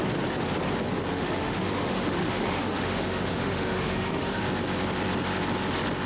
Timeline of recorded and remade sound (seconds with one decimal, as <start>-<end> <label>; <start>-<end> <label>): 0.0-1.1 recorded; 1.1-4.4 remade; 4.4-6.1 recorded

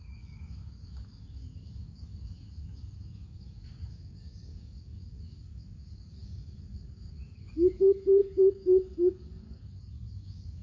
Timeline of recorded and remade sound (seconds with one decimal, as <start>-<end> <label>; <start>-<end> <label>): 0.0-10.6 remade

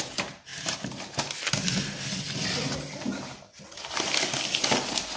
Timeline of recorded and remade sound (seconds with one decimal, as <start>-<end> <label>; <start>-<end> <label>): 0.0-5.2 recorded

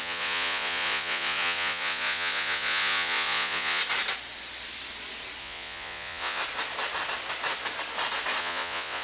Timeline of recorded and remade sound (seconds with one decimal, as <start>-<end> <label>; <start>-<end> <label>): 0.0-3.8 remade; 3.8-5.4 recorded; 5.4-6.4 remade; 6.4-8.4 recorded; 8.4-9.0 remade

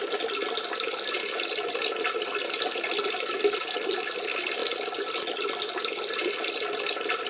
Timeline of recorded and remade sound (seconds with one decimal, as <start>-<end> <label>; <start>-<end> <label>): 0.0-7.3 recorded

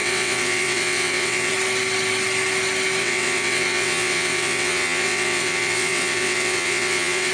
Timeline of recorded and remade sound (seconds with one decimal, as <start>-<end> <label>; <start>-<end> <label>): 0.0-1.5 remade; 1.5-3.0 recorded; 3.0-7.3 remade

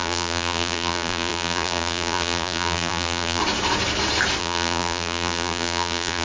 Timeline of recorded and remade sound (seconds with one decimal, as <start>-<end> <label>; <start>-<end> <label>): 0.0-3.4 remade; 3.4-4.4 recorded; 4.4-6.2 remade